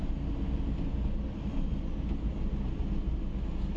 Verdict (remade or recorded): recorded